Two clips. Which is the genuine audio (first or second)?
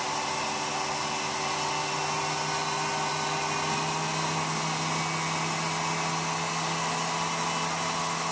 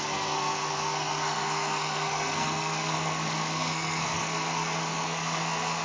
first